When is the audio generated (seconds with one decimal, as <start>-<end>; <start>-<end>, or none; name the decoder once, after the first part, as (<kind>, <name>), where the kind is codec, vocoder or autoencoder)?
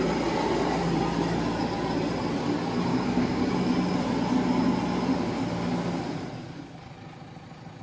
2.9-3.5 (codec, DAC)